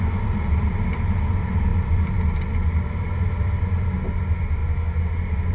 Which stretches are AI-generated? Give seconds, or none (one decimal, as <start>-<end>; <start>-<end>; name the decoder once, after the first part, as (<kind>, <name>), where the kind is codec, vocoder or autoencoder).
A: none